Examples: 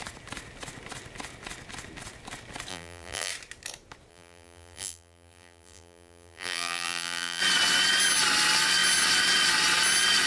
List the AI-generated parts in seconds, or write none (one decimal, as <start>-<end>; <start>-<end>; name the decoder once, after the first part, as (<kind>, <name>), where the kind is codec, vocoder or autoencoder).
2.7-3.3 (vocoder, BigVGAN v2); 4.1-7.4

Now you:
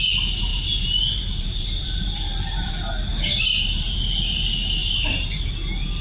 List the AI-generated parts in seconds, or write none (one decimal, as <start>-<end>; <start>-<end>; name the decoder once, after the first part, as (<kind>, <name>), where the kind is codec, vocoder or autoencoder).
0.5-2.7 (vocoder, BigVGAN v2); 3.1-4.0; 4.8-5.4

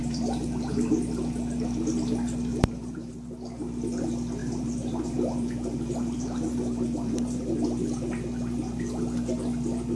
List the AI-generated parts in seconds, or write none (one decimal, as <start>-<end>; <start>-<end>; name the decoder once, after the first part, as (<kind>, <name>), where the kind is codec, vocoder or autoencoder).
0.0-1.0 (vocoder, BigVGAN v2); 2.5-3.1; 4.4-7.4

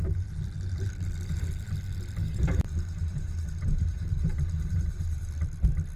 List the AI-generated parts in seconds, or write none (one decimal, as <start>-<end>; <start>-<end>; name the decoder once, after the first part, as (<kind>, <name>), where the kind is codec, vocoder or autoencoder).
2.2-5.3 (vocoder, BigVGAN v2)

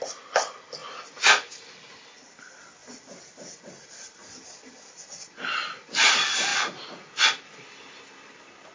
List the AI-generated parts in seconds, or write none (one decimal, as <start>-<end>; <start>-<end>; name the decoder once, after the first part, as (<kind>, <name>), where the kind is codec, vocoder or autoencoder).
0.8-2.0 (vocoder, BigVGAN v2)

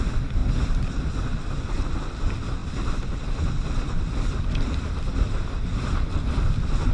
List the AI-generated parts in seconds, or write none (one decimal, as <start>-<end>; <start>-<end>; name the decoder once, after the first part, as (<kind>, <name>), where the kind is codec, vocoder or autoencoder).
0.4-1.6 (vocoder, BigVGAN v2); 2.6-6.9

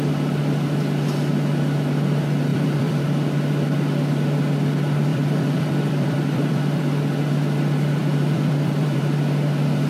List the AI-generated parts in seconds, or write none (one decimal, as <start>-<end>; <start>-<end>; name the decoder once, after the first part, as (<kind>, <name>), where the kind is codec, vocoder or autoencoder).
2.5-3.0 (vocoder, BigVGAN v2); 5.1-6.8; 8.0-9.0